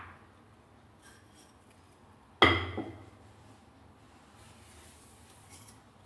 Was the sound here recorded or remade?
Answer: recorded